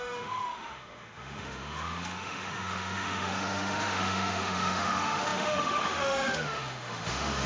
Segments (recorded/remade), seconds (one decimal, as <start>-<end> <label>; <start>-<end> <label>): 0.0-7.5 remade